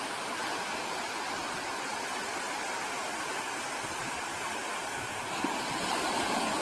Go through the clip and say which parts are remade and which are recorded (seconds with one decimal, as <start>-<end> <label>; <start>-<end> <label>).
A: 0.0-4.3 recorded; 4.3-5.4 remade; 5.4-6.6 recorded